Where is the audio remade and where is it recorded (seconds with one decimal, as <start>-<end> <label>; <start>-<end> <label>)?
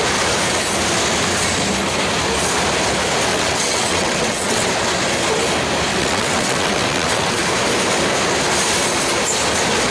0.0-3.3 recorded; 3.3-4.7 remade; 4.7-5.9 recorded; 5.9-7.4 remade; 7.4-9.9 recorded